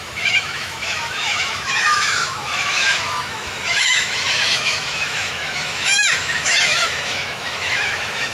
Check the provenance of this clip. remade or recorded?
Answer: remade